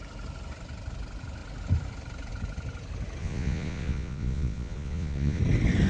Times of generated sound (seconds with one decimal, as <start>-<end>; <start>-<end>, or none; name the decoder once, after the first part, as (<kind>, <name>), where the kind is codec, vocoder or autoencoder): 3.2-5.4 (vocoder, Vocos)